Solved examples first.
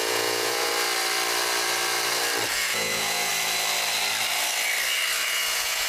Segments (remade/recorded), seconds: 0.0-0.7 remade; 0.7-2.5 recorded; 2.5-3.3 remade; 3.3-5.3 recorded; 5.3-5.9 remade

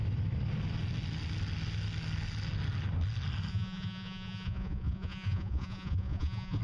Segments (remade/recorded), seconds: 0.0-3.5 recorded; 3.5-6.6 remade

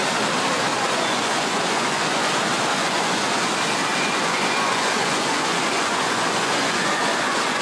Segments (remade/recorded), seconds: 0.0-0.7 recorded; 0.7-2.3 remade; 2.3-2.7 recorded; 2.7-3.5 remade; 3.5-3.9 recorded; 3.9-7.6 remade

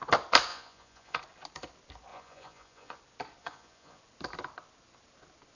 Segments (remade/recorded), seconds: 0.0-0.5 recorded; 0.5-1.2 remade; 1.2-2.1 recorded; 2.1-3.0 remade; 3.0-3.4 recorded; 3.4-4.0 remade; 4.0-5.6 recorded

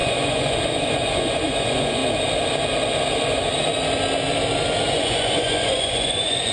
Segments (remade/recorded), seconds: 0.0-2.0 remade; 2.0-4.9 recorded; 4.9-6.5 remade

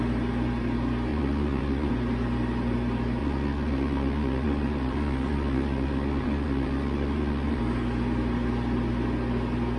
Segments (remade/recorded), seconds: 0.0-1.1 recorded; 1.1-1.9 remade; 1.9-3.2 recorded; 3.2-7.6 remade; 7.6-9.8 recorded